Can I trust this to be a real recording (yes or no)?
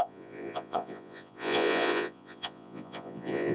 no